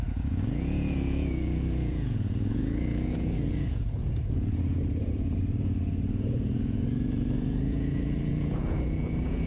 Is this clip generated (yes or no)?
yes